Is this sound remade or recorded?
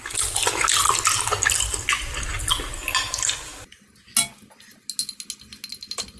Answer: recorded